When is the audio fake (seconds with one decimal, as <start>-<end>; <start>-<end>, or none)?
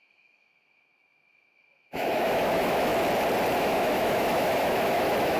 0.0-2.9; 3.6-5.4